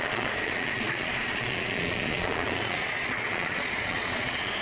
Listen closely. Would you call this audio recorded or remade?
remade